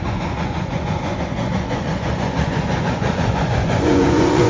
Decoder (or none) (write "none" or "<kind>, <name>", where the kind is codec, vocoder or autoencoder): vocoder, Vocos